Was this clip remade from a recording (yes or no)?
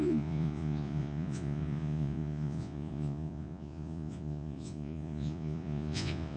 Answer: yes